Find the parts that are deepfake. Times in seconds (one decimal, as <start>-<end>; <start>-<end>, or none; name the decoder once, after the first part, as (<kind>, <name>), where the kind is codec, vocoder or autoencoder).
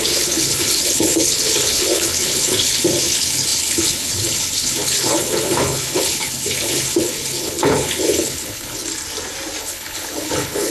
0.0-8.8 (codec, HILCodec); 9.6-10.7